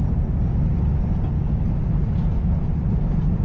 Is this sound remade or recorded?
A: recorded